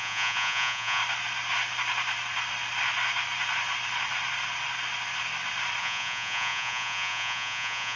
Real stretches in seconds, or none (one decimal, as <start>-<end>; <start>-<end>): 1.0-5.8